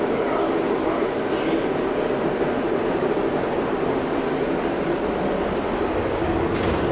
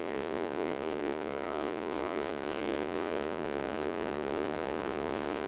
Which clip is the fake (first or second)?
second